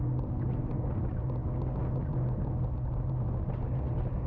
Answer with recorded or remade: recorded